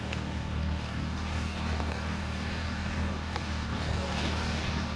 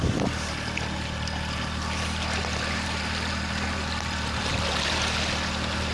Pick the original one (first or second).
second